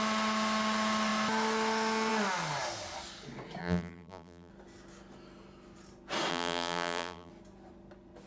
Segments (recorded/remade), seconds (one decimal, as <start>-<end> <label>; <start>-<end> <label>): 0.0-3.6 recorded; 3.6-4.5 remade; 4.5-6.3 recorded; 6.3-7.3 remade; 7.3-8.3 recorded